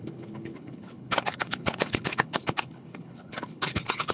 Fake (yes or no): yes